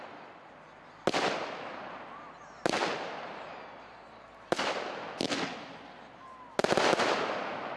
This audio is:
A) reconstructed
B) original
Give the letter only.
B